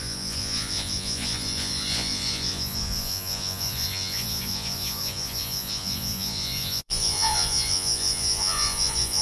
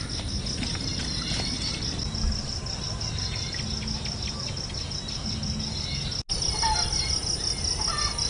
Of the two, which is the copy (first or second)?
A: first